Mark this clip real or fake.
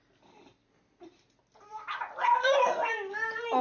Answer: real